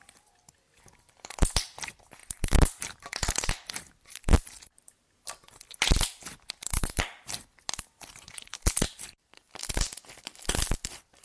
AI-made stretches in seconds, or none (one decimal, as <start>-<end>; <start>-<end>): none